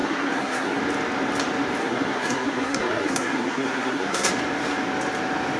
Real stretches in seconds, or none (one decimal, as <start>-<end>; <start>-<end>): 0.8-1.8; 4.3-5.6